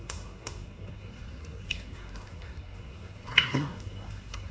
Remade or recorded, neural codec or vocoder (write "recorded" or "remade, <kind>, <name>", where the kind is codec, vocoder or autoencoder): remade, codec, SNAC